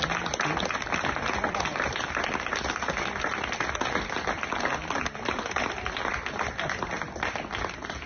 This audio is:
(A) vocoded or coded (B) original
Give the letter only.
B